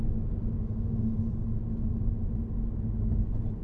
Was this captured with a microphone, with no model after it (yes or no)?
yes